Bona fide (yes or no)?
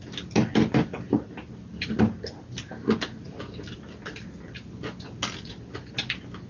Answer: yes